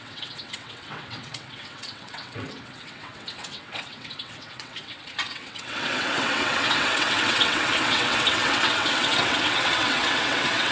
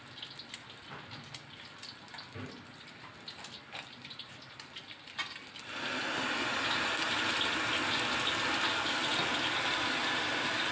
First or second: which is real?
second